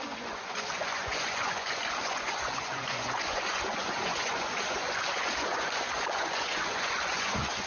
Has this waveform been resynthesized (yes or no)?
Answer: yes